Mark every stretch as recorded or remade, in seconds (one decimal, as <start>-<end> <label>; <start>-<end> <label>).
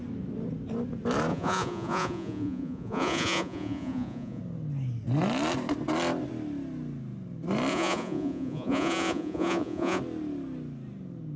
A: 0.0-1.3 recorded; 1.3-4.4 remade; 4.4-7.7 recorded; 7.7-10.0 remade; 10.0-11.4 recorded